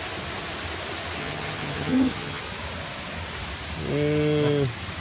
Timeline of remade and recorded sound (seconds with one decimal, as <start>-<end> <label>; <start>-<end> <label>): 0.0-1.2 recorded; 1.2-2.4 remade; 2.4-5.0 recorded